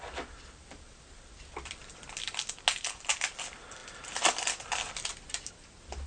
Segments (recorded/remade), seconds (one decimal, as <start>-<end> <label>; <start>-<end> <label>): 0.0-6.1 recorded